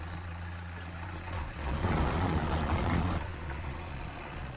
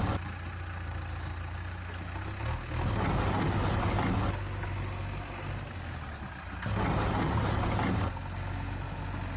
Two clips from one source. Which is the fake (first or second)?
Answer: first